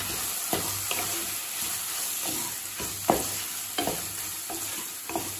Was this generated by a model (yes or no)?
no